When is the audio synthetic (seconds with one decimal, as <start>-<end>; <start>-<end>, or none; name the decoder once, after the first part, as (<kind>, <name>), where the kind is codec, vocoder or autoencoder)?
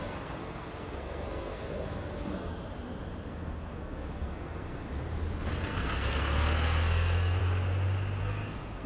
0.0-2.6 (codec, SNAC); 3.3-4.9; 5.5-7.4; 8.2-8.9